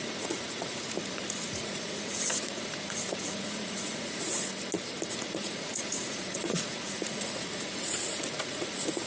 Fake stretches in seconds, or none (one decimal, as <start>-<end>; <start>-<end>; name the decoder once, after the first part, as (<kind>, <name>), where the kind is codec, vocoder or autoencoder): 0.0-4.5 (vocoder, Vocos); 5.1-9.1